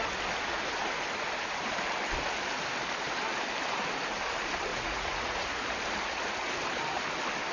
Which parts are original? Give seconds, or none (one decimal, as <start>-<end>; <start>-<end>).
0.0-4.7; 5.6-7.5